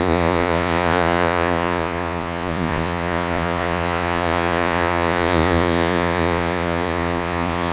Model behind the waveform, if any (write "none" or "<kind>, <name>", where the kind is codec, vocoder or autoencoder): vocoder, Vocos